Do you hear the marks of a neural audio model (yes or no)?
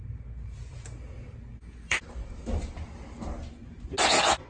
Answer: no